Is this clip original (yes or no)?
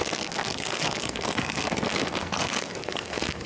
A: no